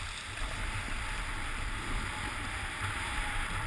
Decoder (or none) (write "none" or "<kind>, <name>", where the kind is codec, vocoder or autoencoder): none